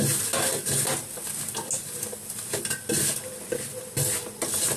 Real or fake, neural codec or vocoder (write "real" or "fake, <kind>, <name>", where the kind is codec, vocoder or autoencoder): real